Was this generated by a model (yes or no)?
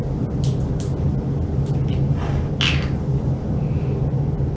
no